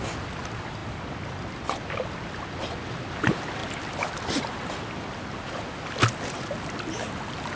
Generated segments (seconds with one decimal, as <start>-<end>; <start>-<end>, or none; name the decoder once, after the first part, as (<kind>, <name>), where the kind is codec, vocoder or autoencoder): 3.6-6.0 (vocoder, BigVGAN v2)